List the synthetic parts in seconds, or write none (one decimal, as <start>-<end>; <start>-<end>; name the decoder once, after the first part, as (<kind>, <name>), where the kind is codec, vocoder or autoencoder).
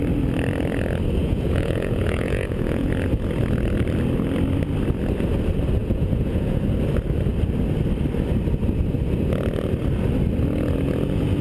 1.2-2.9 (vocoder, Vocos); 5.8-6.6